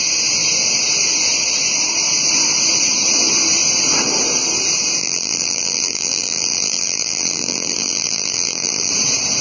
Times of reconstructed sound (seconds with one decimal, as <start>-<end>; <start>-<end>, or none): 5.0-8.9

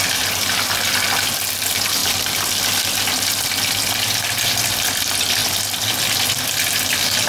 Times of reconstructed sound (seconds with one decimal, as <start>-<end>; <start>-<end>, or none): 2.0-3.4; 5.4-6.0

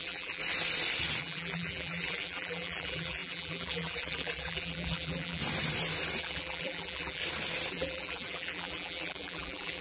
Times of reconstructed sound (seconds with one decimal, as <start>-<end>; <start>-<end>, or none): 0.0-0.4; 1.2-5.4; 6.2-7.2; 7.7-9.8

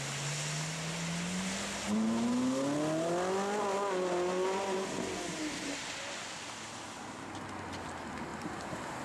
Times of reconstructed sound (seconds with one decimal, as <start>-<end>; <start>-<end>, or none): 8.3-9.0